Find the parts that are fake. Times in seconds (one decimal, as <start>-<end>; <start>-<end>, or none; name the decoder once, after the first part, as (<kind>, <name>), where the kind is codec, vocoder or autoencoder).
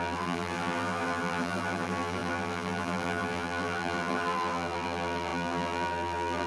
0.0-6.5 (vocoder, BigVGAN v2)